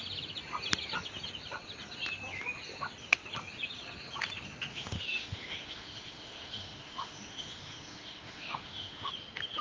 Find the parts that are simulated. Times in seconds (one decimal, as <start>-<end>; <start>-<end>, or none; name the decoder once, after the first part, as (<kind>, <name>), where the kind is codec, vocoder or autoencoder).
4.7-9.1 (autoencoder, DAC-VAE)